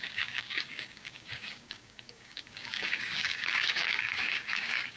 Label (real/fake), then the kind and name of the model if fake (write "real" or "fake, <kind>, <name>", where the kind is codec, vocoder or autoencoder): fake, codec, DAC